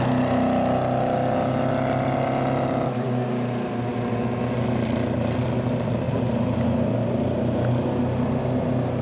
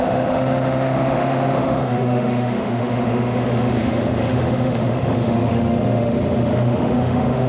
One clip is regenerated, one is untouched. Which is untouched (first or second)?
first